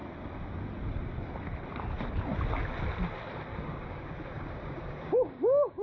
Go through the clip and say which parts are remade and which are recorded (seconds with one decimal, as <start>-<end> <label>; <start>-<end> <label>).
0.0-3.5 recorded; 3.5-5.8 remade